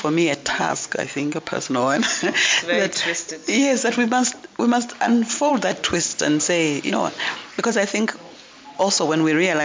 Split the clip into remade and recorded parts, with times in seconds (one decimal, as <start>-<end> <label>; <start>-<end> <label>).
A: 0.0-0.4 recorded; 0.4-2.5 remade; 2.5-9.6 recorded